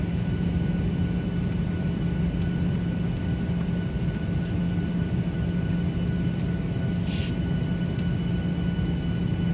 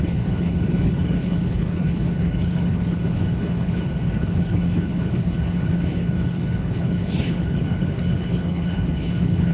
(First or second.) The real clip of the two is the first